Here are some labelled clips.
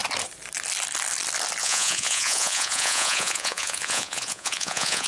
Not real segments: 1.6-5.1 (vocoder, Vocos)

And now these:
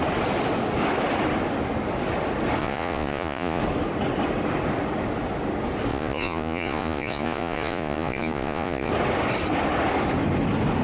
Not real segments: 2.6-3.6 (vocoder, Vocos); 5.9-8.9

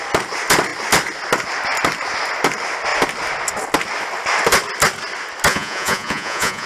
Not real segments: 5.5-6.7 (vocoder, Vocos)

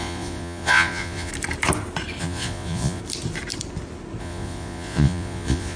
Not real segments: 0.0-1.3 (vocoder, Vocos); 2.2-3.0; 4.2-5.8

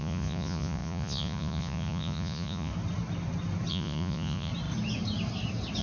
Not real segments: 0.0-2.7 (vocoder, Vocos); 3.7-4.5

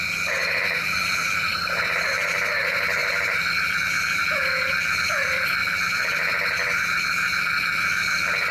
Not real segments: none

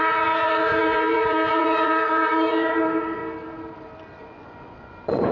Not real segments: 0.0-3.2 (vocoder, Vocos); 4.2-5.3